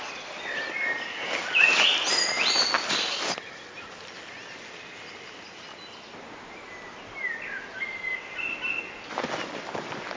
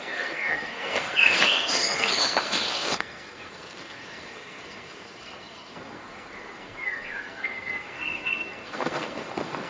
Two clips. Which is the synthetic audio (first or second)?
second